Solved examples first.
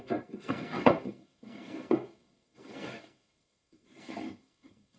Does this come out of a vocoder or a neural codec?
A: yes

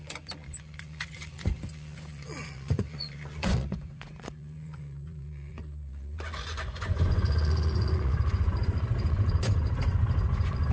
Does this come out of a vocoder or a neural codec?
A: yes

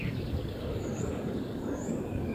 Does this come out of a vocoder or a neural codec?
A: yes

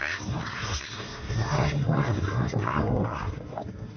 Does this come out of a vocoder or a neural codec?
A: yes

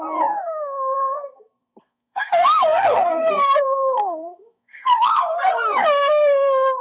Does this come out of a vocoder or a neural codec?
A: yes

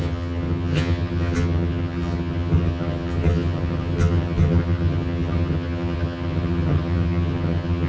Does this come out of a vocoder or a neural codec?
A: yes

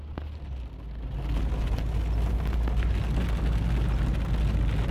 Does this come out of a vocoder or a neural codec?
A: no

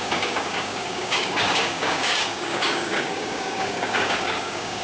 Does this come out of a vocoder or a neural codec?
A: yes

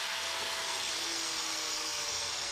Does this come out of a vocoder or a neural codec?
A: yes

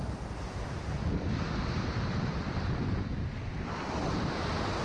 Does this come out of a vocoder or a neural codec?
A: no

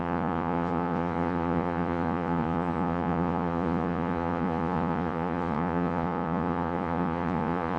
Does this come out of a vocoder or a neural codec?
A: yes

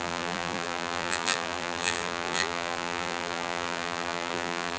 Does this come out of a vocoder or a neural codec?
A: yes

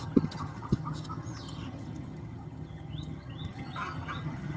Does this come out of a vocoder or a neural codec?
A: yes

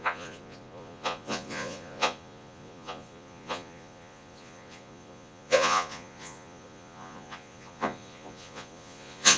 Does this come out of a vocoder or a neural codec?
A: yes